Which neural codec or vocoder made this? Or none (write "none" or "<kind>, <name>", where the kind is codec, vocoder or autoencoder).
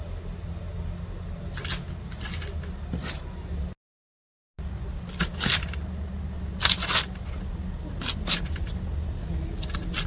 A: none